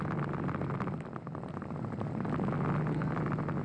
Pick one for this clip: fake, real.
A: real